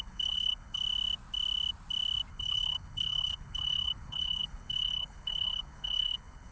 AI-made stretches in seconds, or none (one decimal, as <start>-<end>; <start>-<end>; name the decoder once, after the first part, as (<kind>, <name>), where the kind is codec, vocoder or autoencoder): 0.0-0.8 (codec, HILCodec); 2.3-6.5

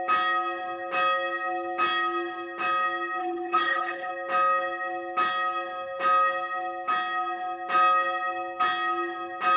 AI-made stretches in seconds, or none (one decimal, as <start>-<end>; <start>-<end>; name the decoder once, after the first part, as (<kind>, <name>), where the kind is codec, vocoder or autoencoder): 3.2-4.1 (codec, HILCodec)

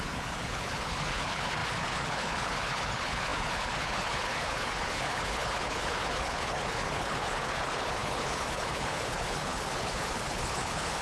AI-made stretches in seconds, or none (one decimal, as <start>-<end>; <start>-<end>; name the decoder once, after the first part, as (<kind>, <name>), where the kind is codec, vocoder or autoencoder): 0.0-11.0 (codec, HILCodec)